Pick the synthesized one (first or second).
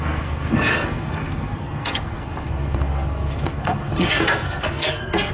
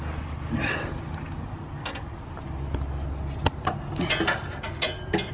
first